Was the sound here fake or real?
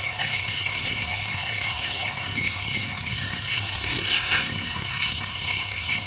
fake